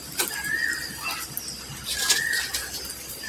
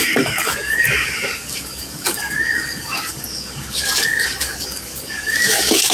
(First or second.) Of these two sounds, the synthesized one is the second